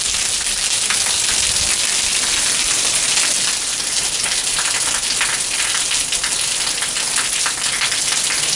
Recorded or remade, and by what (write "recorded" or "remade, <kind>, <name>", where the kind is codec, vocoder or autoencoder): recorded